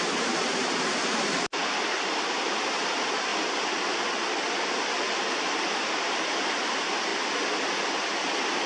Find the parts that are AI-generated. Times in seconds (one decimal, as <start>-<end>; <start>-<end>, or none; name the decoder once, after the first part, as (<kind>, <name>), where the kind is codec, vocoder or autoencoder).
0.0-3.3 (vocoder, BigVGAN v2); 5.2-7.1